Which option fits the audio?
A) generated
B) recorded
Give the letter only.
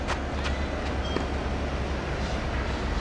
B